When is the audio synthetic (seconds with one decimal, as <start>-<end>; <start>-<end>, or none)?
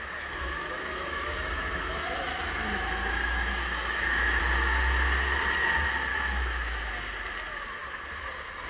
0.4-4.4; 6.1-6.9